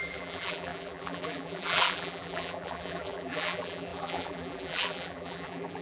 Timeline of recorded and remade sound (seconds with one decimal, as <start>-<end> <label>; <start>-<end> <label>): 0.0-5.8 remade